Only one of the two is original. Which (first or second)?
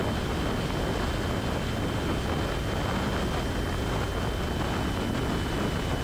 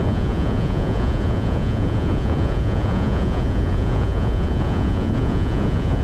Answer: first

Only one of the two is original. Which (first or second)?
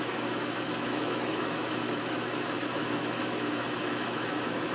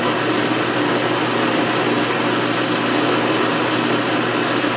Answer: second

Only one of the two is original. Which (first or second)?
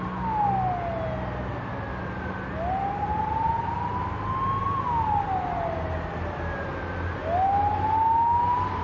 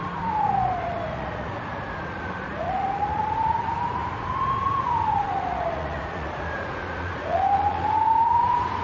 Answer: first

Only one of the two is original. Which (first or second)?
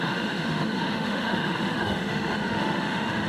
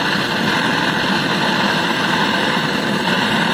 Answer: second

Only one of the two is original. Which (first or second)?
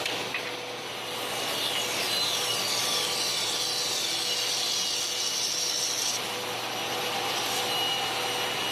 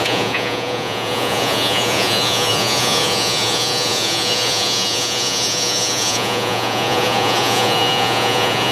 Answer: first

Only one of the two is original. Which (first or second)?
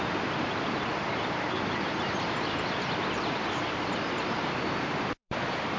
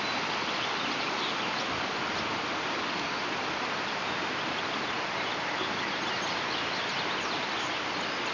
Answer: second